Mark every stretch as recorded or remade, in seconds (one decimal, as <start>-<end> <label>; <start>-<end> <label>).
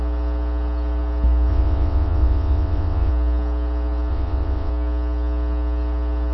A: 0.0-1.5 recorded; 1.5-3.1 remade; 3.1-4.1 recorded; 4.1-4.7 remade; 4.7-6.3 recorded